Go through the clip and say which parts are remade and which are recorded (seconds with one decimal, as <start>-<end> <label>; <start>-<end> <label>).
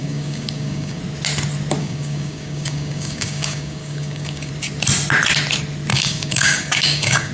0.0-1.0 remade; 1.0-1.8 recorded; 1.8-4.5 remade; 4.5-5.9 recorded; 5.9-7.3 remade